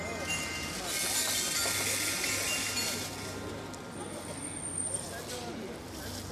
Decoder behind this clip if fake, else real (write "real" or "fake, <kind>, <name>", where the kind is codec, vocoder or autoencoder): real